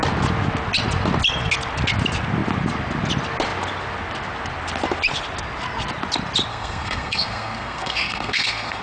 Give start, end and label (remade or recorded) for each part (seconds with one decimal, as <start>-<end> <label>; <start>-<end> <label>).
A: 0.0-6.5 recorded; 6.5-8.8 remade